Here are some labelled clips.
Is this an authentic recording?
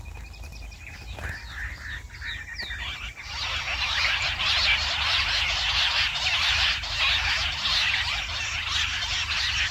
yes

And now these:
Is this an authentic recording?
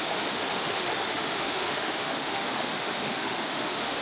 no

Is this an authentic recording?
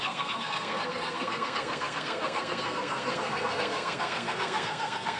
no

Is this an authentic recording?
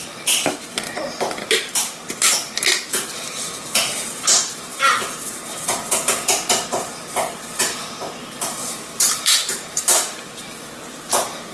no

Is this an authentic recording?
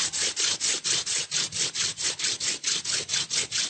yes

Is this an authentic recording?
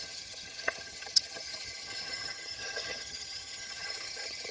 no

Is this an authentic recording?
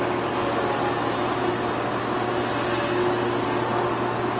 yes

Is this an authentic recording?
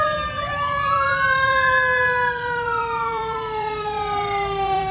no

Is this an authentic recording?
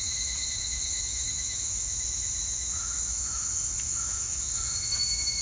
no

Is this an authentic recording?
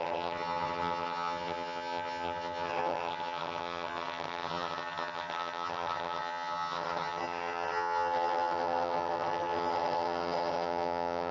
no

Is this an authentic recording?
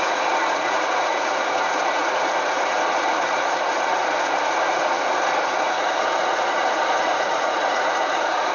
no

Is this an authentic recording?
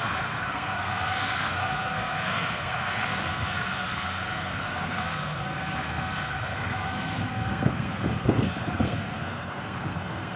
no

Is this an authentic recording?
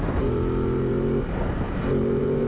no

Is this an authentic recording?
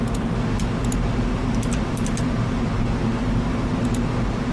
yes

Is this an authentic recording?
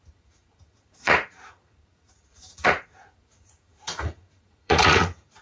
no